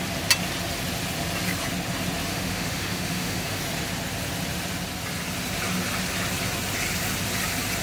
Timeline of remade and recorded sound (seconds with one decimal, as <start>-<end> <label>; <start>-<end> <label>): 0.0-2.3 recorded; 2.3-3.6 remade; 3.6-7.8 recorded